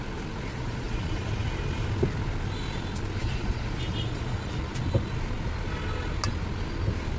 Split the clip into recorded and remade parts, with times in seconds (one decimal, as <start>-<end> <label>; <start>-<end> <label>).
0.0-0.5 recorded; 0.5-1.3 remade; 1.3-3.2 recorded; 3.2-4.8 remade; 4.8-7.2 recorded